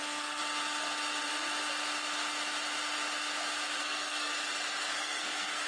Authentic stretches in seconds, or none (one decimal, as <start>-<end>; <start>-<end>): 0.4-3.8; 4.3-5.0